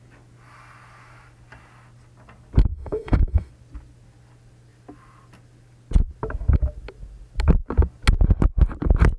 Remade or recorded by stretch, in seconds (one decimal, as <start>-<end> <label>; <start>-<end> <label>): 0.0-2.7 recorded; 2.7-3.5 remade; 3.5-9.2 recorded

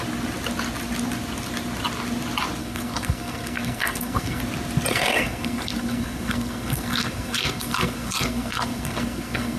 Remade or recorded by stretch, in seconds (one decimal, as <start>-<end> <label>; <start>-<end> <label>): 0.0-2.6 recorded; 2.6-4.4 remade; 4.4-4.9 recorded; 4.9-9.6 remade

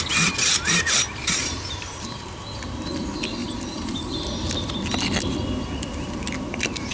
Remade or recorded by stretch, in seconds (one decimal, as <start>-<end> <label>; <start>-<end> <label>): 0.0-1.2 recorded; 1.2-2.2 remade; 2.2-3.4 recorded; 3.4-4.3 remade; 4.3-6.9 recorded

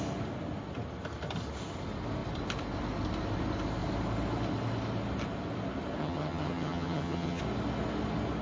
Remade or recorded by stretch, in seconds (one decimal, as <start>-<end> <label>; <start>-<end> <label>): 0.0-6.0 recorded; 6.0-7.4 remade; 7.4-8.4 recorded

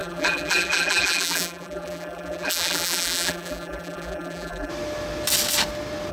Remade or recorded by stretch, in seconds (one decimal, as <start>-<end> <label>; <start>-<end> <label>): 0.0-4.7 remade; 4.7-6.1 recorded

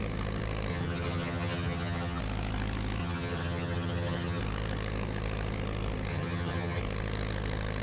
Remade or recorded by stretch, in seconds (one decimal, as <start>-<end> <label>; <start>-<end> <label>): 0.0-0.7 recorded; 0.7-2.2 remade; 2.2-3.0 recorded; 3.0-4.4 remade; 4.4-6.1 recorded; 6.1-6.8 remade; 6.8-7.8 recorded

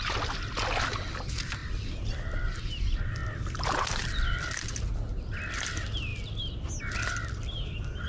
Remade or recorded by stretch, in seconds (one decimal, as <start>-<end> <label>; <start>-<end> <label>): 0.0-1.6 recorded; 1.6-2.6 remade; 2.6-3.2 recorded; 3.2-3.7 remade; 3.7-8.1 recorded